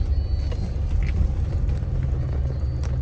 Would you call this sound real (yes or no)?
yes